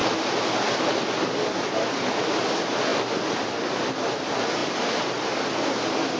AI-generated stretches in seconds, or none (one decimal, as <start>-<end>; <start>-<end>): none